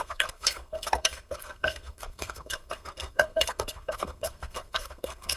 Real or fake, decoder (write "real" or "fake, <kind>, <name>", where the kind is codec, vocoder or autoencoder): fake, codec, SNAC